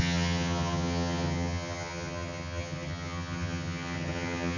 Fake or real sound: fake